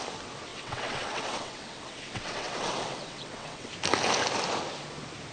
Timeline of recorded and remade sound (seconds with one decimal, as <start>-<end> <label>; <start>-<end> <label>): 0.0-0.5 recorded; 0.5-3.7 remade; 3.7-5.3 recorded